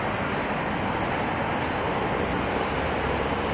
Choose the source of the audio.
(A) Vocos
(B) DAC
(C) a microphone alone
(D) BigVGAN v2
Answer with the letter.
C